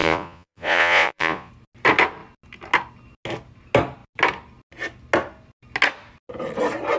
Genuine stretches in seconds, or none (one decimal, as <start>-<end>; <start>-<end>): 1.5-7.0